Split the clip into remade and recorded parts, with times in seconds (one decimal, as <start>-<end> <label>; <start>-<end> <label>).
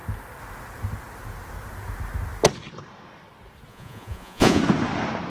0.0-3.7 recorded; 3.7-4.6 remade; 4.6-5.3 recorded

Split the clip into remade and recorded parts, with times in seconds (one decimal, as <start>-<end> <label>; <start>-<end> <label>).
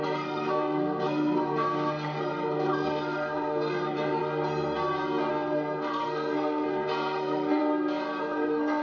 0.0-4.2 remade; 4.2-5.3 recorded; 5.3-7.6 remade; 7.6-8.2 recorded; 8.2-8.8 remade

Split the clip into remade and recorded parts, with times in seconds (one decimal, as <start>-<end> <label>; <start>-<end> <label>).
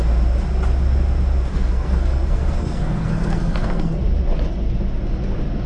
0.0-1.5 recorded; 1.5-4.0 remade; 4.0-5.7 recorded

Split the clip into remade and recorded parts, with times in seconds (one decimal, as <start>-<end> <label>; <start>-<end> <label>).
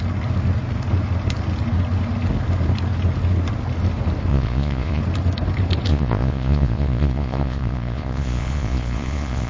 0.0-4.3 recorded; 4.3-5.0 remade; 5.0-5.9 recorded; 5.9-9.5 remade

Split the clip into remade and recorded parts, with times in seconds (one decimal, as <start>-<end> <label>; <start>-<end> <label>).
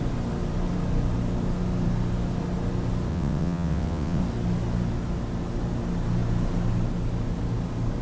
0.0-3.1 recorded; 3.1-4.2 remade; 4.2-8.0 recorded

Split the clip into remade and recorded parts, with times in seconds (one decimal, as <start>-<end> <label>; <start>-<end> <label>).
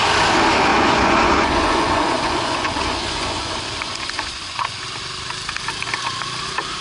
0.0-0.7 recorded; 0.7-4.8 remade; 4.8-6.8 recorded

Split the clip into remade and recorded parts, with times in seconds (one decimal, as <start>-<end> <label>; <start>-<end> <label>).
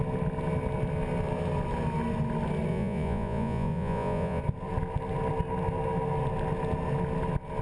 0.0-2.7 recorded; 2.7-4.4 remade; 4.4-7.6 recorded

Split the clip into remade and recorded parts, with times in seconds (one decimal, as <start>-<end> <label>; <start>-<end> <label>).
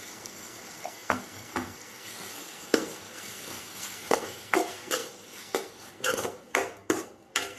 0.0-7.6 remade